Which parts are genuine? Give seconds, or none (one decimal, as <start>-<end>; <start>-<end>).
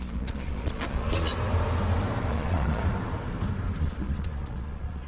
1.3-2.3; 2.8-3.8